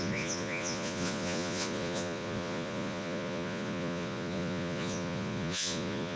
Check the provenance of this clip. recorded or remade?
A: remade